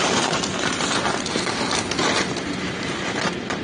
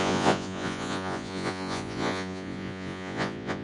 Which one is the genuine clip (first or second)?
first